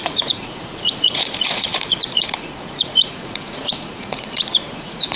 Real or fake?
fake